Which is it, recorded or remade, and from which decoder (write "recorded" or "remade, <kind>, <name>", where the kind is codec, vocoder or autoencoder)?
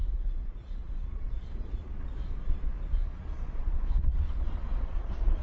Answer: remade, vocoder, Vocos